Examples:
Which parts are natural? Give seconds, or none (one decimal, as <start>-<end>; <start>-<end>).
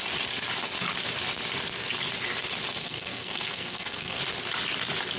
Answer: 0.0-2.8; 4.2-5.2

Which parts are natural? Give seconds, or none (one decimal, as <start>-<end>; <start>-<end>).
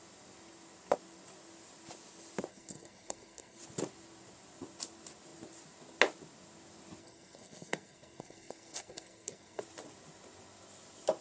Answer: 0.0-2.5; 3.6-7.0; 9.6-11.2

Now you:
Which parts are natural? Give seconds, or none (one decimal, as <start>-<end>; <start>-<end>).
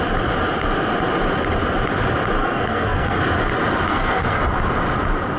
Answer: 0.0-2.4; 3.2-3.9; 4.4-5.4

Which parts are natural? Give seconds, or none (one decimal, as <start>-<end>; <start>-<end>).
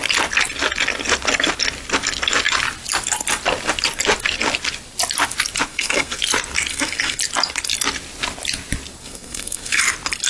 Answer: 0.0-5.7; 6.2-6.7; 7.2-9.0; 9.8-10.3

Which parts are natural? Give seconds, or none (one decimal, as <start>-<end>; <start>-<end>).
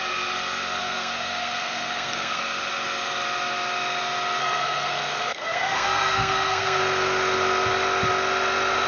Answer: 0.0-0.8; 2.4-4.4; 6.8-8.9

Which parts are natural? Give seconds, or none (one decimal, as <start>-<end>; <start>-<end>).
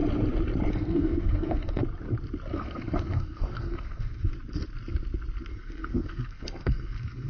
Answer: 0.0-0.7; 1.8-2.5; 4.3-5.5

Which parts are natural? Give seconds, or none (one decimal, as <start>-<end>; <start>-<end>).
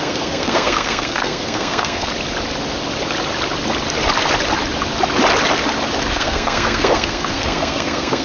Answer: 2.1-6.1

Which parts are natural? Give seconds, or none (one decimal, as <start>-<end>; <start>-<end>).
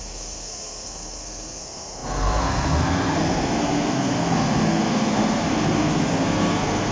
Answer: none